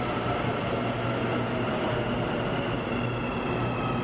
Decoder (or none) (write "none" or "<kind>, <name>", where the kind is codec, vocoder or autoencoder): none